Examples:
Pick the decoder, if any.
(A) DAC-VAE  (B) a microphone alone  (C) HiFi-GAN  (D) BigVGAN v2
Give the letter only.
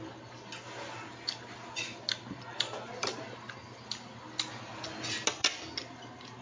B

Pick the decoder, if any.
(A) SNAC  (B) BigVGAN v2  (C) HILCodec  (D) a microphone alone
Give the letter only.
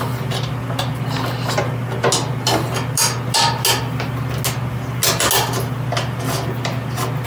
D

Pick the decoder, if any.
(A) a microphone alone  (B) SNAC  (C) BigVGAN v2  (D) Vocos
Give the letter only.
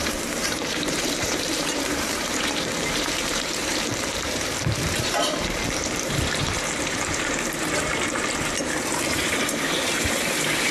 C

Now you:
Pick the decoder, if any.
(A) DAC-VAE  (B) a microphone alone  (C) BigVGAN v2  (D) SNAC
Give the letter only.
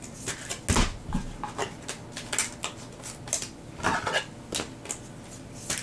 B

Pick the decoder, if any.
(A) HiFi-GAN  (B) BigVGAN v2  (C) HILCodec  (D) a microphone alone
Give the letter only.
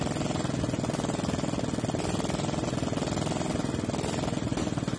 D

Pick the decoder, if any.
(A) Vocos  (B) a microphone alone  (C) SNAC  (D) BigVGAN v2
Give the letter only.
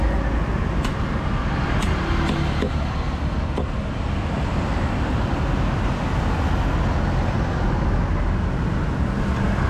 B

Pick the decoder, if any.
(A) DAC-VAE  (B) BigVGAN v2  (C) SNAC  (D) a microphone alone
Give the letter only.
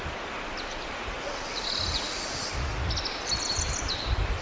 D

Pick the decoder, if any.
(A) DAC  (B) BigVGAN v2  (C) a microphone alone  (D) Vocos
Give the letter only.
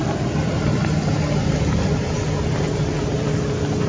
C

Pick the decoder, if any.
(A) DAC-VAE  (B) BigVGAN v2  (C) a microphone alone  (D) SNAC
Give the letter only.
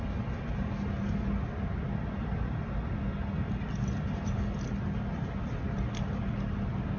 C